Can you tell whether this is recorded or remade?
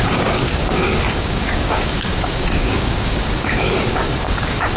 remade